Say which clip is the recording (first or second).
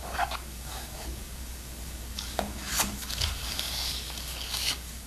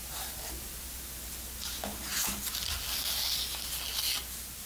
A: second